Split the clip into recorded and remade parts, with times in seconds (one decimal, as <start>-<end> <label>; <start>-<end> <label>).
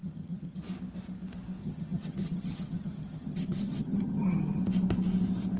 0.0-0.6 remade; 0.6-1.6 recorded; 1.6-4.6 remade; 4.6-5.6 recorded